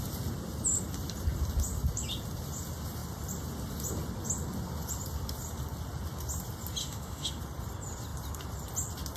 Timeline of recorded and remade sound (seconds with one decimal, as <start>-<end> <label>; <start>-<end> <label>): 0.0-6.8 recorded; 6.8-7.4 remade; 7.4-9.2 recorded

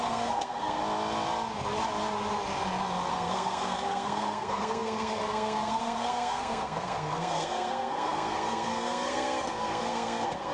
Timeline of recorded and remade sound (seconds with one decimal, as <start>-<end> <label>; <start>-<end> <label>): 0.0-0.8 remade; 0.8-3.1 recorded; 3.1-10.5 remade

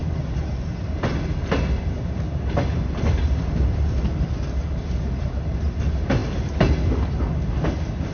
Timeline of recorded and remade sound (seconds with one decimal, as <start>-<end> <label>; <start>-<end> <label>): 0.0-8.1 recorded

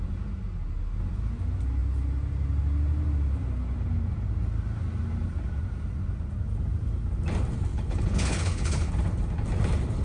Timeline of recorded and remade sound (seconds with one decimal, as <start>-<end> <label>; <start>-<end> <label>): 0.0-7.7 recorded; 7.7-8.9 remade; 8.9-10.0 recorded

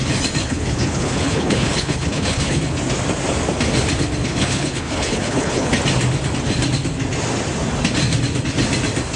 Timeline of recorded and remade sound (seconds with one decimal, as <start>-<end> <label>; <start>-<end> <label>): 0.0-0.4 recorded; 0.4-2.6 remade; 2.6-4.2 recorded; 4.2-5.7 remade; 5.7-9.2 recorded

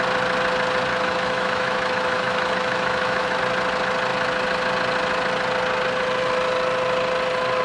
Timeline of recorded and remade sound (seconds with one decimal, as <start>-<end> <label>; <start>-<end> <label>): 0.0-0.9 recorded; 0.9-3.4 remade; 3.4-7.6 recorded

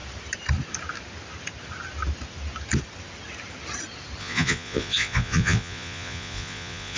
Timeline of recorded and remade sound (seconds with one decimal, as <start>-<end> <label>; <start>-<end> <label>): 0.0-4.2 recorded; 4.2-7.0 remade